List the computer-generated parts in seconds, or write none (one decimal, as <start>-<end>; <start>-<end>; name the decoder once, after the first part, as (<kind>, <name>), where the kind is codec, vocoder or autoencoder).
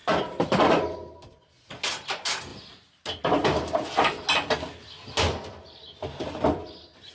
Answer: none